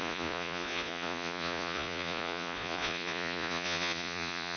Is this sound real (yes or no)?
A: no